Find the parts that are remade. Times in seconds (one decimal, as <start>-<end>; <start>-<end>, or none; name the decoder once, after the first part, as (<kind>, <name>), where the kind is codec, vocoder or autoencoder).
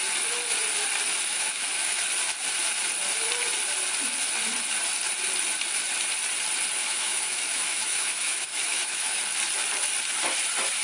1.3-2.0 (autoencoder, DAC-VAE); 6.8-9.2